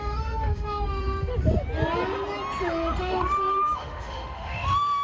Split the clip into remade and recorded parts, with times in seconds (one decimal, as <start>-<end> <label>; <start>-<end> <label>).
0.0-1.3 remade; 1.3-3.0 recorded; 3.0-5.0 remade